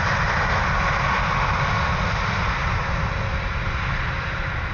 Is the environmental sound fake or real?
real